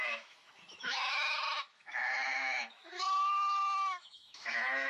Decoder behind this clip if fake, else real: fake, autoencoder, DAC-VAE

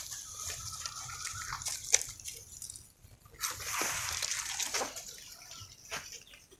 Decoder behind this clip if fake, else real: fake, vocoder, BigVGAN v2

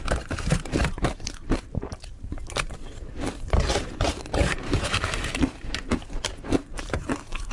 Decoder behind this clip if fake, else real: fake, vocoder, BigVGAN v2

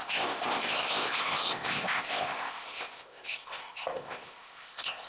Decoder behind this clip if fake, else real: fake, codec, ZipCodec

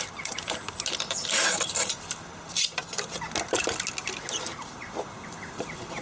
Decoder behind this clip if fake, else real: real